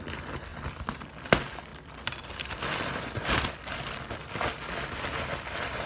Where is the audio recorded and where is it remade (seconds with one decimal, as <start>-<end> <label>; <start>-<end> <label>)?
0.0-0.5 recorded; 0.5-1.1 remade; 1.1-1.7 recorded; 1.7-4.1 remade; 4.1-5.9 recorded